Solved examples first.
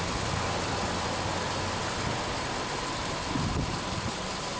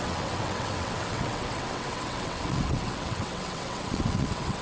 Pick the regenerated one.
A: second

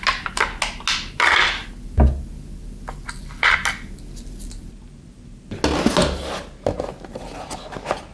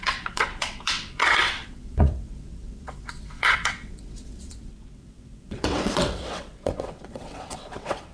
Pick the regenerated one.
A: second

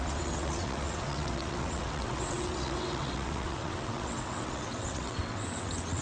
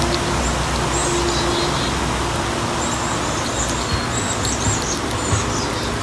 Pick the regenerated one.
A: first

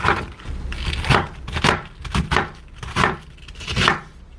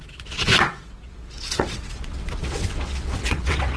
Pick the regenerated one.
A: second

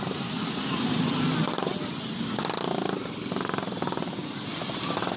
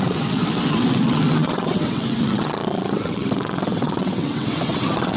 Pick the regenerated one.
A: second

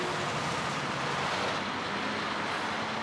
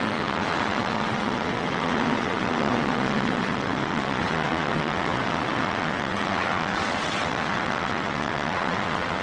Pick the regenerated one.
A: second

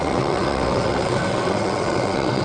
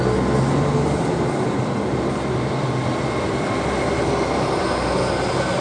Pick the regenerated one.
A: first